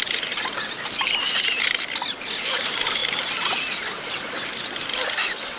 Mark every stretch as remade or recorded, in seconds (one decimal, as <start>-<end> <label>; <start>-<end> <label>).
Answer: 0.0-5.6 recorded